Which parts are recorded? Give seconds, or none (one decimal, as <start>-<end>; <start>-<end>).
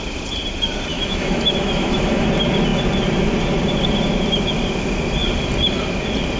0.0-0.9; 2.3-6.4